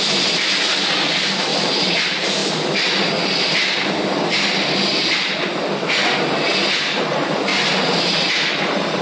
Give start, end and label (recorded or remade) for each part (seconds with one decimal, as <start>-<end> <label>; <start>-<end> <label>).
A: 0.0-2.4 remade; 2.4-6.7 recorded; 6.7-7.5 remade; 7.5-8.0 recorded; 8.0-9.0 remade